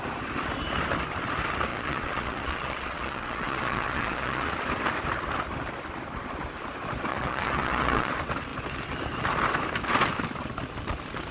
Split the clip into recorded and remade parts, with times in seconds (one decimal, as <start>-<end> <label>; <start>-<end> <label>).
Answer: 0.0-1.7 recorded; 1.7-4.5 remade; 4.5-7.1 recorded; 7.1-8.1 remade; 8.1-11.3 recorded